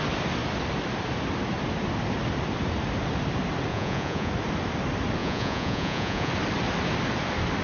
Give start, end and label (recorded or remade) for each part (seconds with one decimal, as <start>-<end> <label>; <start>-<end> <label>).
0.0-3.7 recorded; 3.7-4.3 remade; 4.3-5.2 recorded; 5.2-6.3 remade; 6.3-7.6 recorded